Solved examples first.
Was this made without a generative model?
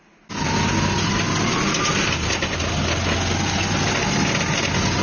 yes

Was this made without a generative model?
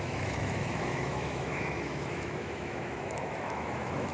no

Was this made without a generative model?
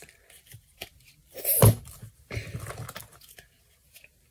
yes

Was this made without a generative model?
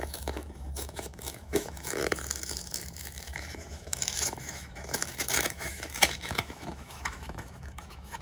no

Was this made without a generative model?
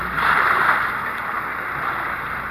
yes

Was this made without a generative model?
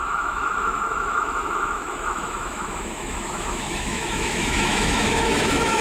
no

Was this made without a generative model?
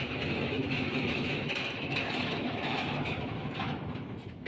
no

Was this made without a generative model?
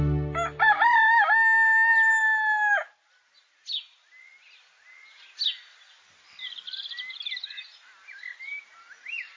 yes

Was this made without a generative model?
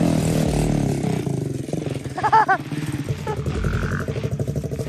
yes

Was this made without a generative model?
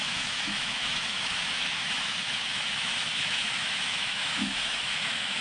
no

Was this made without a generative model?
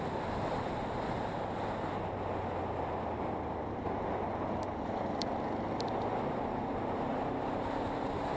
yes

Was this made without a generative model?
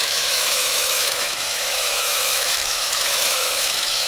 no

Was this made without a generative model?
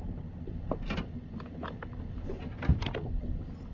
yes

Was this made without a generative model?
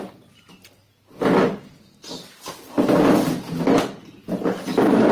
yes